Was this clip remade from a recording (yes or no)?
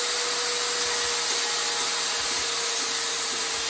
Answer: no